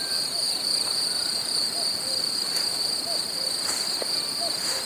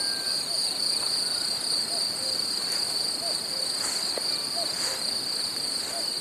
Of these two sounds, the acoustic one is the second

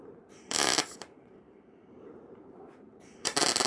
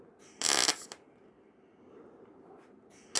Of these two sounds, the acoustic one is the second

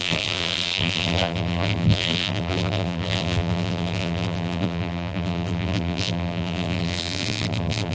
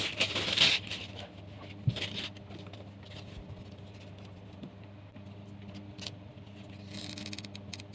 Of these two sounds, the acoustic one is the second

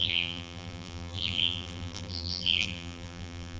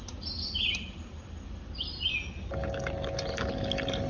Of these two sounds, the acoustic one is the second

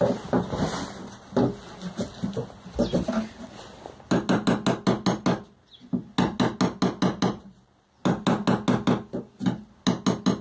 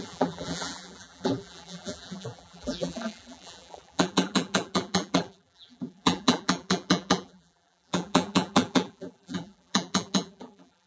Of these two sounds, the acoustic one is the first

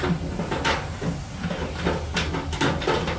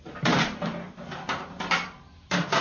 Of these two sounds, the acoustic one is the first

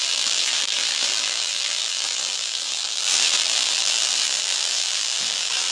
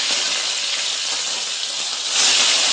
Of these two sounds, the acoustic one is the second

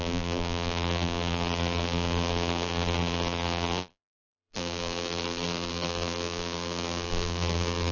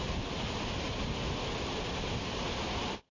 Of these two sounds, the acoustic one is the second